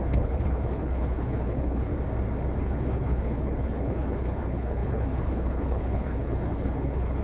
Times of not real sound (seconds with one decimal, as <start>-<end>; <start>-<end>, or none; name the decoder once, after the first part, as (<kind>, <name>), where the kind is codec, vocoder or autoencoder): 0.0-1.9 (codec, HILCodec); 2.6-7.2